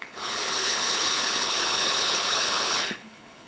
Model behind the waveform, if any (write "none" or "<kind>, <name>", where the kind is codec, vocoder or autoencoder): codec, HILCodec